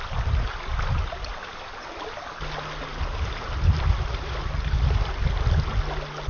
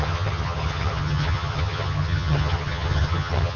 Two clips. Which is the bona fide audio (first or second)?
first